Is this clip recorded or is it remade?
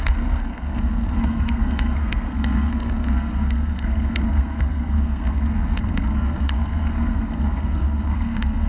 remade